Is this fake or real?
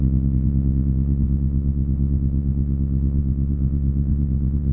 fake